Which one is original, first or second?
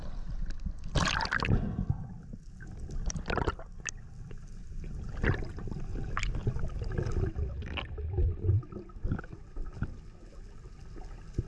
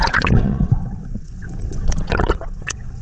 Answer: first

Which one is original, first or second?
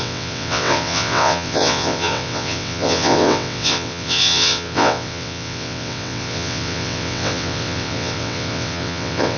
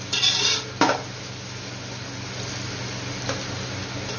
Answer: second